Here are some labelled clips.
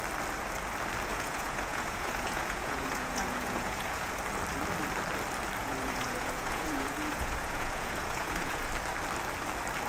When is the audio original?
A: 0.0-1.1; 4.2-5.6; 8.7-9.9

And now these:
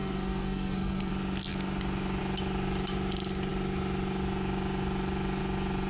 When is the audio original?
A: 1.1-5.9

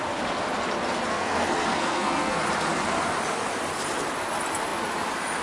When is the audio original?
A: 0.0-1.1; 2.4-5.4

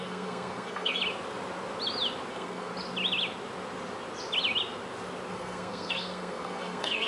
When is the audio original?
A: 1.0-2.3; 2.7-5.3

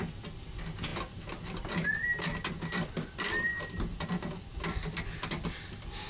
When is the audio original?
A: 0.0-6.1